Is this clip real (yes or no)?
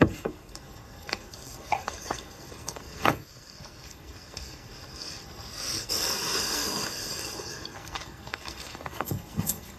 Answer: no